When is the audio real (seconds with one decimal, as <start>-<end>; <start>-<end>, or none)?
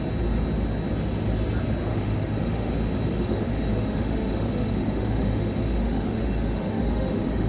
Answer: 0.0-1.9; 2.7-3.1